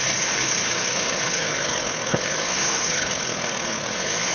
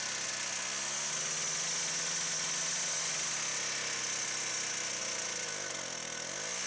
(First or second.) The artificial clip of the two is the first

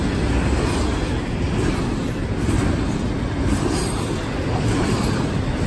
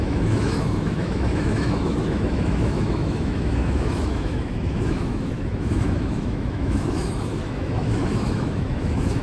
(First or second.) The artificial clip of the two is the second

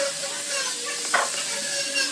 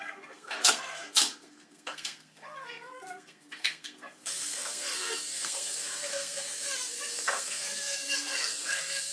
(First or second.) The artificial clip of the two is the second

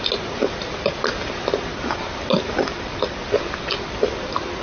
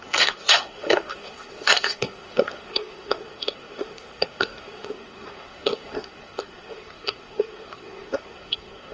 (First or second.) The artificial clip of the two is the second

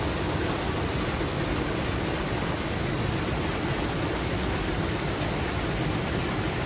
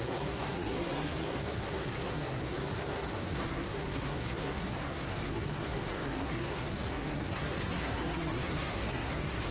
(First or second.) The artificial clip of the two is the second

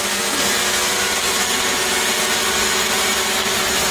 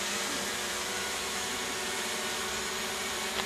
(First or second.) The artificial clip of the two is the second